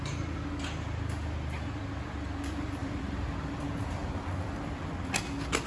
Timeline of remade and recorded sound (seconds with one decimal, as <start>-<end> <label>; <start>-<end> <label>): 0.0-2.8 recorded; 2.8-3.6 remade; 3.6-4.0 recorded; 4.0-4.9 remade; 4.9-5.7 recorded